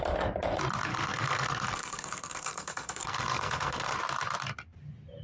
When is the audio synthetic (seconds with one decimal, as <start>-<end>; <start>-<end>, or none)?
0.9-4.0